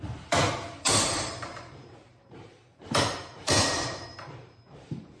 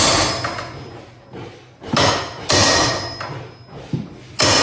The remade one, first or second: first